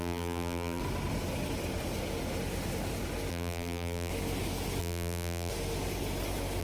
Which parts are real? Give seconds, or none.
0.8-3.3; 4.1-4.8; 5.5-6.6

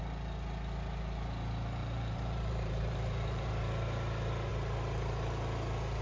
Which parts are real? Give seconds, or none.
0.0-1.8; 3.5-6.0

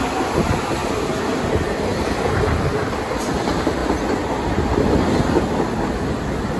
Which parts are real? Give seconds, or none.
0.0-1.9; 2.7-6.6

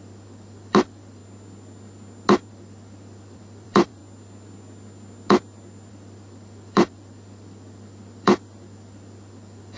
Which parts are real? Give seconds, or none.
1.2-2.5; 4.0-5.9

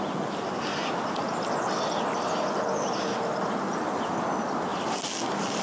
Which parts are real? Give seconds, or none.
0.0-5.6

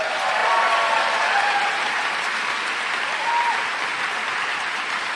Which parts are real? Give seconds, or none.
0.4-3.5

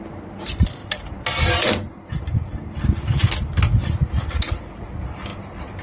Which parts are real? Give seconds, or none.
0.0-5.8

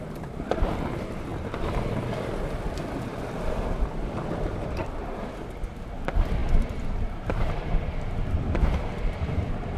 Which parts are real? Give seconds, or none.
4.8-5.7